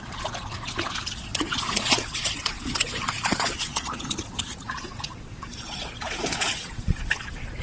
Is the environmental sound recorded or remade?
remade